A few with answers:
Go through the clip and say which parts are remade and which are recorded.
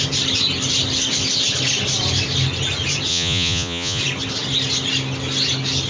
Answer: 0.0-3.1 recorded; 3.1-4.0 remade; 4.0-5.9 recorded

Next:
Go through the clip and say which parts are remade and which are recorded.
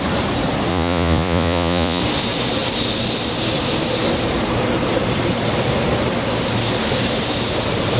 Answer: 0.0-0.7 recorded; 0.7-2.0 remade; 2.0-8.0 recorded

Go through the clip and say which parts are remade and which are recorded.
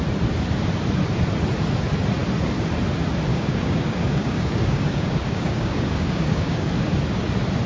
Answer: 0.0-3.3 recorded; 3.3-6.7 remade; 6.7-7.7 recorded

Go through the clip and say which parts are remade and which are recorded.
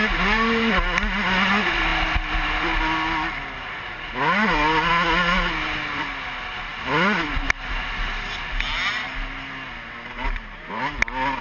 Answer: 0.0-11.4 recorded